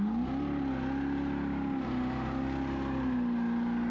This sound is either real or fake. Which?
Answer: real